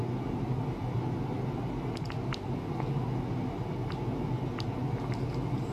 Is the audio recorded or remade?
recorded